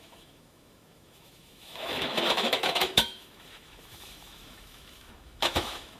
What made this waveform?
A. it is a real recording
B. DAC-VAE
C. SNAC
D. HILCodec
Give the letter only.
B